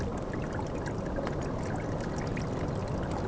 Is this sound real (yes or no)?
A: yes